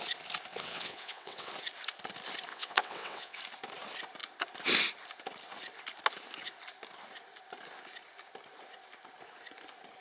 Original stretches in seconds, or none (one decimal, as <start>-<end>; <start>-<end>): 0.0-0.5; 1.5-2.5; 3.4-10.0